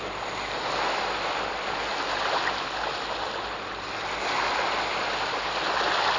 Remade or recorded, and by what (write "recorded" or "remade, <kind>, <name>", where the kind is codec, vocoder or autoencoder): recorded